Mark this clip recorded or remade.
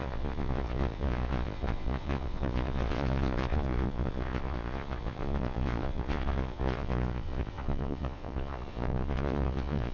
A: remade